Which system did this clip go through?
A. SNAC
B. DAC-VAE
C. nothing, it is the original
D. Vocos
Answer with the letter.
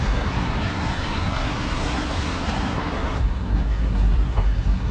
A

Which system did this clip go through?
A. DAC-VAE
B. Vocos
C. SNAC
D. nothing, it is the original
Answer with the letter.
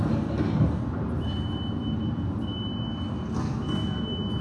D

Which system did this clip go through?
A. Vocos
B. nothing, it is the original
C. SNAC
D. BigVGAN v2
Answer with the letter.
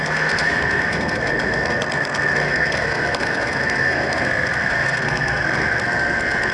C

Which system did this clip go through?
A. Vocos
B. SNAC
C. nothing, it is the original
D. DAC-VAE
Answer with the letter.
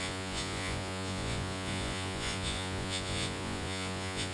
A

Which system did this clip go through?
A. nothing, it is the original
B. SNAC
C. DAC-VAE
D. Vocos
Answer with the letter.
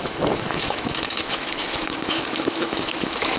C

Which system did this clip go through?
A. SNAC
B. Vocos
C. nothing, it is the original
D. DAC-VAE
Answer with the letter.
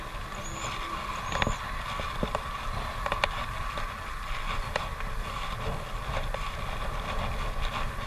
C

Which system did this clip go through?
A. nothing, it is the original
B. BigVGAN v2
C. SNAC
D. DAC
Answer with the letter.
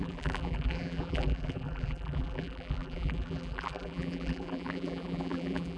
B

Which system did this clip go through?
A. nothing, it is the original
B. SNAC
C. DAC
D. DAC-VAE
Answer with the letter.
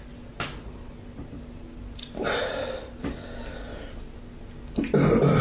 A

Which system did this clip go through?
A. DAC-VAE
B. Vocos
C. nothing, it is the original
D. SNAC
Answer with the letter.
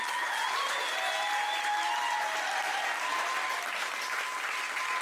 C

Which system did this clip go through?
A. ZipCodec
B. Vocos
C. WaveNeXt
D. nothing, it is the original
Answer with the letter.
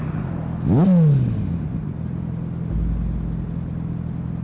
D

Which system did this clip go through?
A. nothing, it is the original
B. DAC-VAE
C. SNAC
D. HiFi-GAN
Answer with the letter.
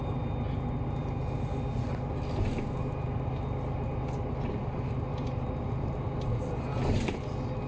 A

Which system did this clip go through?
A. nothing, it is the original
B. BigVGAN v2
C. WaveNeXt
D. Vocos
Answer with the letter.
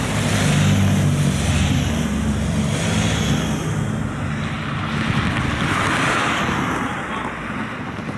A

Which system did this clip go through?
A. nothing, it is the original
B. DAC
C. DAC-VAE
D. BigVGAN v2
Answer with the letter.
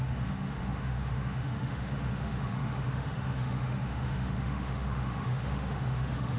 C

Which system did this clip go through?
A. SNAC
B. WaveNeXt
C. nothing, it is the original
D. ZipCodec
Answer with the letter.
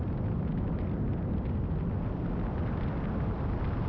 C